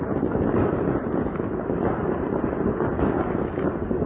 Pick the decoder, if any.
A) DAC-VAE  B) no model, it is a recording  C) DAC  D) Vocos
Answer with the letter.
B